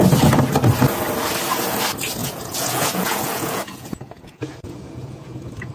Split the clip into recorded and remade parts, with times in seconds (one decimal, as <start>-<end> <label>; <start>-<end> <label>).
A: 0.0-2.2 recorded; 2.2-5.7 remade